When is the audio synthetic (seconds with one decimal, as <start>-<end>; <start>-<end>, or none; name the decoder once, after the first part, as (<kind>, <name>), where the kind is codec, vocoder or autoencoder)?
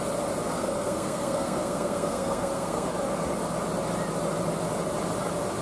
0.5-2.9 (codec, SNAC)